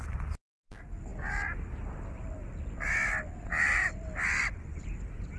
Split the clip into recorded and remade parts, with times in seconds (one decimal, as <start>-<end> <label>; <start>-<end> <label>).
0.0-3.8 recorded; 3.8-4.6 remade; 4.6-5.4 recorded